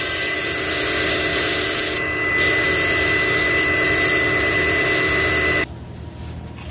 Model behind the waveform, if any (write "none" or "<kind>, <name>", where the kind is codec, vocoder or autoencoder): none